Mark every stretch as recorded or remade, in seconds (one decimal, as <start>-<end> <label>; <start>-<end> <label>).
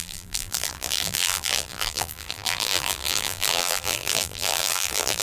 0.0-5.2 remade